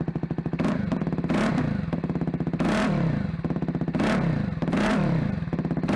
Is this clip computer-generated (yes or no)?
no